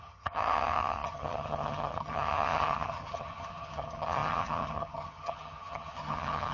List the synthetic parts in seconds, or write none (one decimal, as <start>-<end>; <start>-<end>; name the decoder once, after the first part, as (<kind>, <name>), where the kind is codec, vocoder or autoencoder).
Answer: 0.0-6.5 (vocoder, HiFi-GAN)